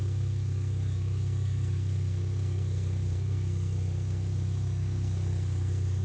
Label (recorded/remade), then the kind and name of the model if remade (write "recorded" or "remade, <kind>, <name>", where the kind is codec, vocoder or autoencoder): remade, codec, SNAC